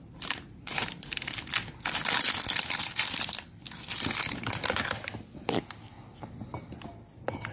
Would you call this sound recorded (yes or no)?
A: yes